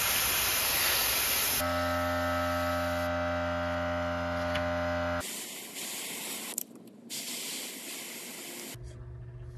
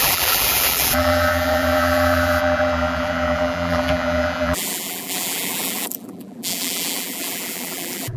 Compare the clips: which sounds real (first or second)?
first